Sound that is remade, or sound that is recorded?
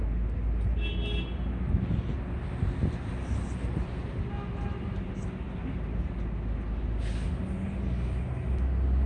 recorded